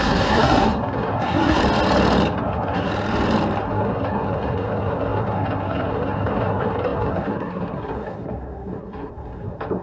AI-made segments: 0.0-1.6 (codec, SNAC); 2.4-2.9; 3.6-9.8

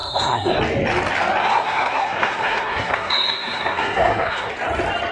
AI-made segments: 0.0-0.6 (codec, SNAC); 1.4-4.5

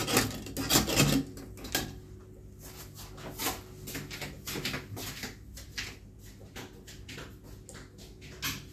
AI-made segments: none